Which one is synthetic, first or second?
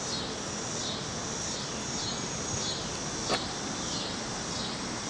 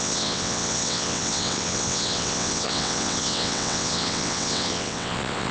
second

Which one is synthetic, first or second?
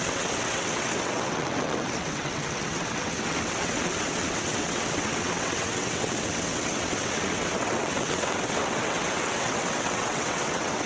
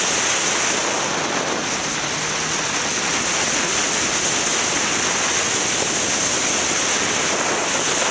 first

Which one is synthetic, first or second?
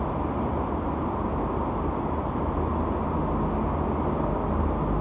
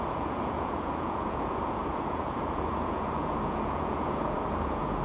second